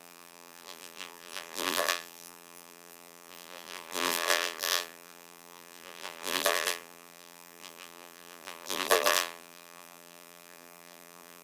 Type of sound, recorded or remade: remade